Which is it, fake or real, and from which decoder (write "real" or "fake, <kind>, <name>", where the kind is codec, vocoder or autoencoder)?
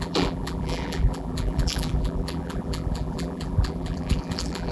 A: fake, vocoder, BigVGAN v2